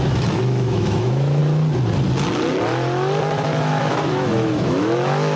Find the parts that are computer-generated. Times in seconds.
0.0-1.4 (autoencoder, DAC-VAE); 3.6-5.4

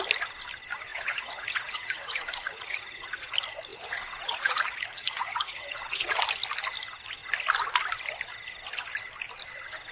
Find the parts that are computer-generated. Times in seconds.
0.9-3.2 (vocoder, Vocos); 3.7-6.2